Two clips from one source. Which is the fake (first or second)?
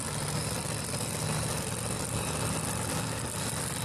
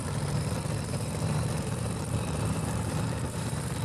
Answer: second